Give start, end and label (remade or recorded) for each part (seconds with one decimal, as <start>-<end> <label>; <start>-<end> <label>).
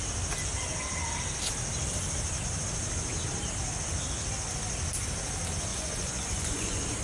0.0-5.7 recorded; 5.7-7.0 remade